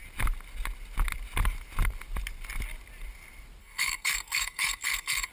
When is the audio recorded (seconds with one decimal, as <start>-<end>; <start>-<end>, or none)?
0.0-3.6